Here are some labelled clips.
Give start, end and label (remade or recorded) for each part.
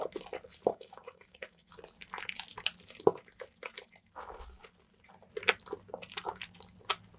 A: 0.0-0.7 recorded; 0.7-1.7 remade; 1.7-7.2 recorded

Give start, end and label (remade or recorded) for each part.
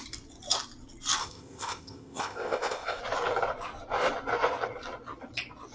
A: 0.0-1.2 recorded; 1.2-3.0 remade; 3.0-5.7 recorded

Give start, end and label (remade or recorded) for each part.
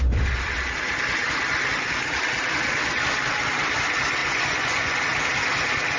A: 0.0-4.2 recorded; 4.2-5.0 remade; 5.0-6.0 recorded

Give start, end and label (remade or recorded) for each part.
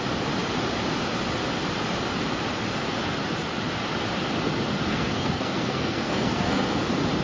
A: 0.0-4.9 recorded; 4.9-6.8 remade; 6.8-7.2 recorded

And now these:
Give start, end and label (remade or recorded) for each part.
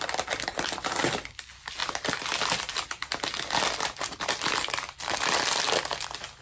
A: 0.0-6.4 recorded